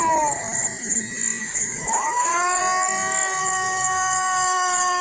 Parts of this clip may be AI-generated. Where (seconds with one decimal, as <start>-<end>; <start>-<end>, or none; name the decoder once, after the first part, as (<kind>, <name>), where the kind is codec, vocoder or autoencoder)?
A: 1.4-2.6 (codec, DAC); 3.4-5.0